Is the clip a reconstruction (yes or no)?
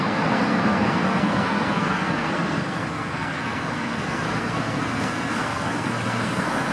yes